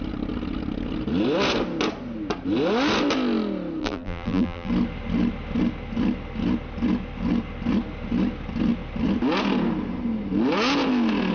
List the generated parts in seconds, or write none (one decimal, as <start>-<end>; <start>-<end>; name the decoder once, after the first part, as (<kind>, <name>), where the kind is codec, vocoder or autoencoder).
3.8-4.7 (vocoder, BigVGAN v2)